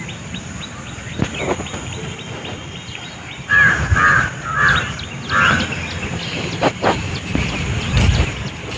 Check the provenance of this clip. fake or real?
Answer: real